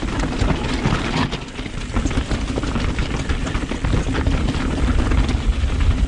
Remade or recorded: recorded